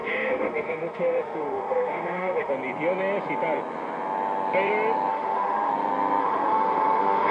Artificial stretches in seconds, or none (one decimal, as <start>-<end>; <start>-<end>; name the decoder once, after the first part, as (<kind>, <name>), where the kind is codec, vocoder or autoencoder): 0.0-2.5 (autoencoder, DAC-VAE); 5.1-5.7; 6.2-7.3